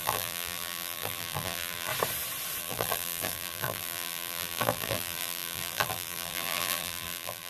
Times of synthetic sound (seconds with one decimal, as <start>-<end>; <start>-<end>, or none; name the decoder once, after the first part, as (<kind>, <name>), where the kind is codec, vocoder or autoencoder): 0.0-1.9 (vocoder, BigVGAN v2); 2.6-7.5

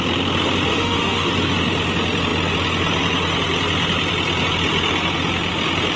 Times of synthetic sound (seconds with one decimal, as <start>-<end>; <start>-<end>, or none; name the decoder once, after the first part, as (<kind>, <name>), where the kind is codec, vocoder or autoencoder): 0.7-1.3 (autoencoder, DAC-VAE)

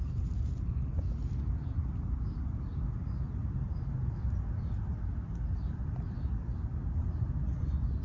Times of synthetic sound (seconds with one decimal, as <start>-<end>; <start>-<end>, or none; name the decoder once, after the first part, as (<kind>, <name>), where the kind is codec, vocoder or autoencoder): none

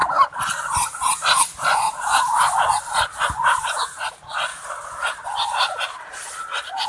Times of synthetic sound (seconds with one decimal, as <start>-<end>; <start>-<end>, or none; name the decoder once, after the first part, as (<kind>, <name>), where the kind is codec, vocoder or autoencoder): 0.0-4.1 (vocoder, BigVGAN v2); 4.5-6.9

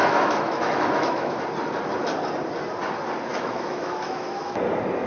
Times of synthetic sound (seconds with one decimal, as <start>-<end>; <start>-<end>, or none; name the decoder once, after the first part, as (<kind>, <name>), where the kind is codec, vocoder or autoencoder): 0.0-1.4 (autoencoder, DAC-VAE); 3.3-4.6

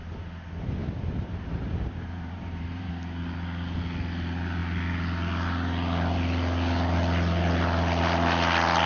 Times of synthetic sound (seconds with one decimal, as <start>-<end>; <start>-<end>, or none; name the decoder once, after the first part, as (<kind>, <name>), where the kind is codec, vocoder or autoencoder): 0.8-2.9 (vocoder, BigVGAN v2)

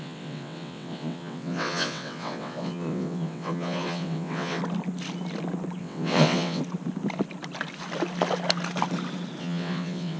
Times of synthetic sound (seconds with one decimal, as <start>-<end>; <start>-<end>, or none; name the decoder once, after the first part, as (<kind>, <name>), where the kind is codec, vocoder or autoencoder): 0.0-4.6 (vocoder, WaveNeXt); 5.8-6.6; 9.4-10.2

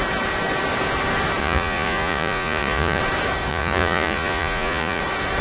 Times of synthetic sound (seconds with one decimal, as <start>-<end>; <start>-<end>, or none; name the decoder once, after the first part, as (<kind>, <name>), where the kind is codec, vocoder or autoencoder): 1.4-3.0 (vocoder, Vocos); 3.5-5.0